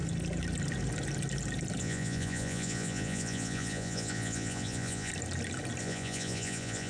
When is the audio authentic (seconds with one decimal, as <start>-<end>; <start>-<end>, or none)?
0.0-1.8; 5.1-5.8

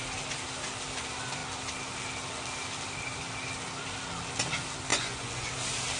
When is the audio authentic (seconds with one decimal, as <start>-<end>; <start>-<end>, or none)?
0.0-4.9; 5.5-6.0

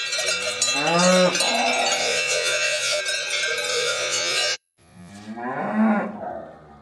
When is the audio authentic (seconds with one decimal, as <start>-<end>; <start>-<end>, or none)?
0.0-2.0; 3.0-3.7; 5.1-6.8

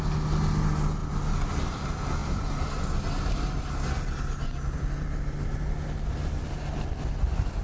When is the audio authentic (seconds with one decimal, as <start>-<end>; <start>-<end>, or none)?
0.0-7.6

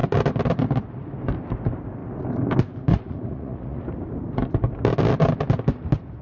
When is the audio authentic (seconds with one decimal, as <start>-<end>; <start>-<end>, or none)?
0.0-2.9; 3.8-6.2

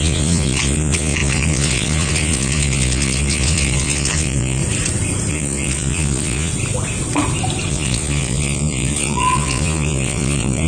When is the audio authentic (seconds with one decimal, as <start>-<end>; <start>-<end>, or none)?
4.6-5.3; 6.5-7.7

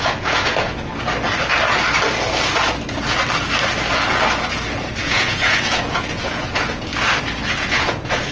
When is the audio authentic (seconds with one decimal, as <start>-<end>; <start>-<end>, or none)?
0.9-5.0; 6.9-7.6